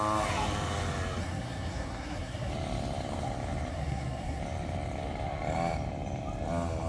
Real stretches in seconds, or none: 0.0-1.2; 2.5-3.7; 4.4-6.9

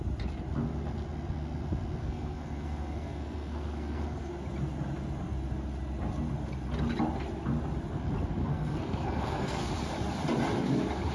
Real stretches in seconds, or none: 0.0-2.0; 4.3-8.4; 9.7-11.1

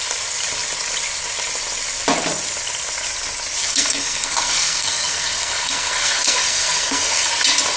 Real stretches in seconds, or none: 0.0-3.6; 7.3-7.8

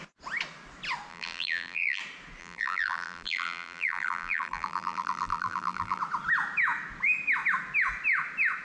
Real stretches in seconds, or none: 0.0-1.1; 2.0-2.4; 6.0-8.6

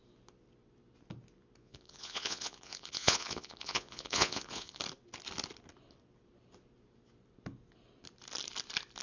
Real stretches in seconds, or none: 0.0-1.6; 4.8-9.0

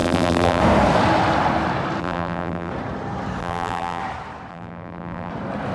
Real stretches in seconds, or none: 0.6-2.0; 2.7-3.4; 4.0-4.5; 5.3-5.7